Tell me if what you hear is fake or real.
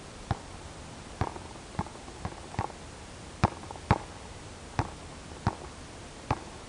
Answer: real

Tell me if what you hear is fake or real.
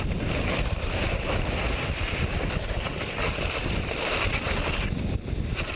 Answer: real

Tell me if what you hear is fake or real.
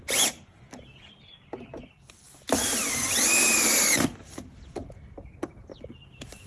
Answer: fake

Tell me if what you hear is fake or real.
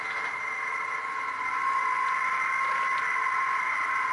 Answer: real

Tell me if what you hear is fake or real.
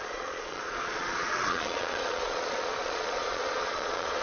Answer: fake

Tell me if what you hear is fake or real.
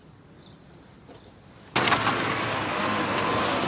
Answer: real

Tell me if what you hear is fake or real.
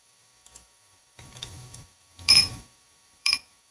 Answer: fake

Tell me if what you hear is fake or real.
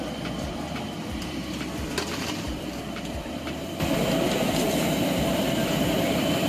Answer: fake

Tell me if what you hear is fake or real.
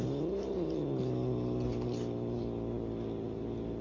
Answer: real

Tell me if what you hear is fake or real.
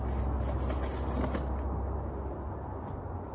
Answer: real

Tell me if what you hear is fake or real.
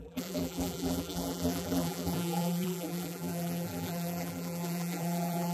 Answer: fake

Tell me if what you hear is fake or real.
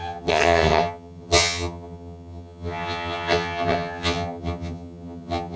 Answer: fake